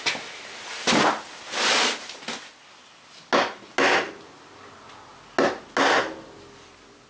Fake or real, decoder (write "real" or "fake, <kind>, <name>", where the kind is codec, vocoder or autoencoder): real